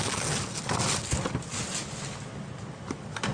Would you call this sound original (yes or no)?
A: yes